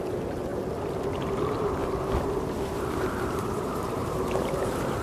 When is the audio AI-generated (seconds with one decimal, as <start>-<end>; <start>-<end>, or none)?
0.0-0.5; 1.4-1.8; 2.7-5.0